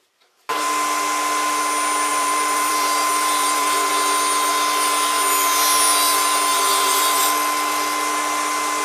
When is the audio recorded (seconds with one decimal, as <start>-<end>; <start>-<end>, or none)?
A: 0.0-2.1; 3.9-6.5; 7.2-8.8